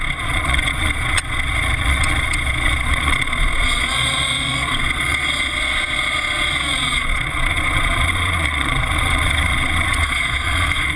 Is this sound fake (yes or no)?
yes